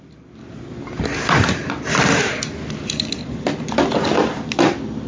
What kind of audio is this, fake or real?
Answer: fake